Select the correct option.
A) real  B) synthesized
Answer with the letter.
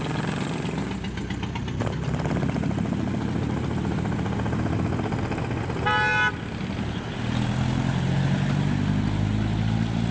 A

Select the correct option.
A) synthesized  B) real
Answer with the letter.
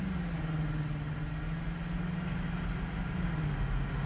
B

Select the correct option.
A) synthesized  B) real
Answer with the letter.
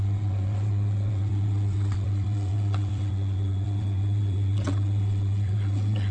A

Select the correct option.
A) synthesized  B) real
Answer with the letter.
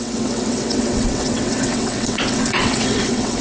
A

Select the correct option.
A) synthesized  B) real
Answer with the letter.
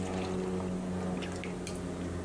B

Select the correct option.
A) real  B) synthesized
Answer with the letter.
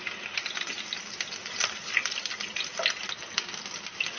A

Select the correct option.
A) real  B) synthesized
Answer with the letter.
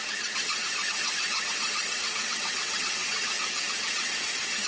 B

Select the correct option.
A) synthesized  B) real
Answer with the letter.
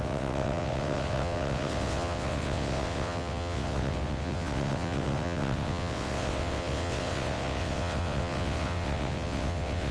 A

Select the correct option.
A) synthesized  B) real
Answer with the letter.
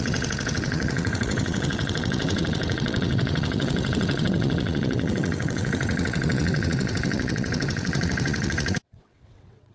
A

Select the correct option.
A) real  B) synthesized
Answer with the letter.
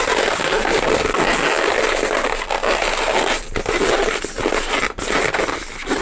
A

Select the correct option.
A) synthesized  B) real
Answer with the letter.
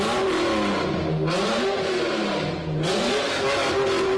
B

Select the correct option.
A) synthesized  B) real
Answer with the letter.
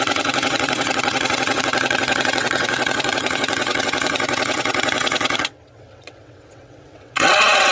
A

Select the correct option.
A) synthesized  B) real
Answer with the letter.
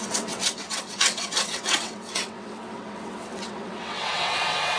A